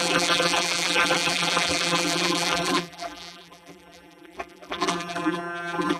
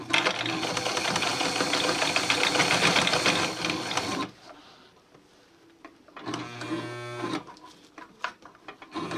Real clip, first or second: second